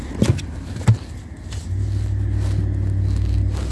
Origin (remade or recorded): recorded